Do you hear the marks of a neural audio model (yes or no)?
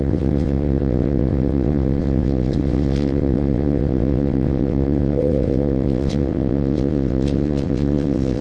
yes